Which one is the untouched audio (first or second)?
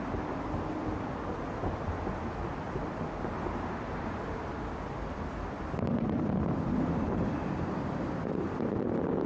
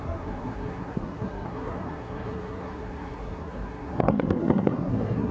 first